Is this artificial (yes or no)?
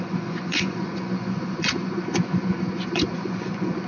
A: yes